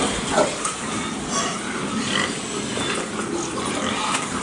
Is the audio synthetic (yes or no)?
no